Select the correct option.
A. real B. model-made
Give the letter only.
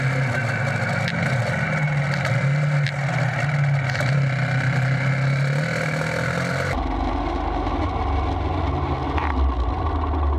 A